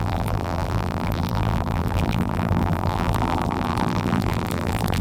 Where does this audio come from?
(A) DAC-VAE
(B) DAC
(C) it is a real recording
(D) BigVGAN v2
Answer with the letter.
D